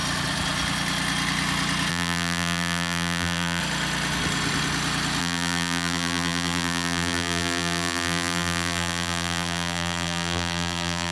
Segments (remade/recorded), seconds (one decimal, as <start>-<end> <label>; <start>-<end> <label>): 0.0-1.9 recorded; 1.9-3.6 remade; 3.6-5.2 recorded; 5.2-11.1 remade